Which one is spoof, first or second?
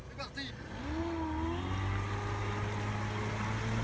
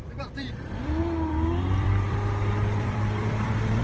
second